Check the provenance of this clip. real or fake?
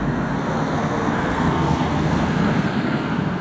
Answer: fake